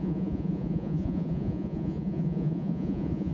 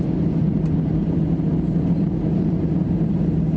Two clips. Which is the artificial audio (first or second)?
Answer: first